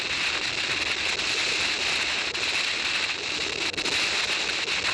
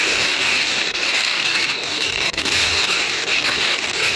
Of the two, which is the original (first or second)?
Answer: first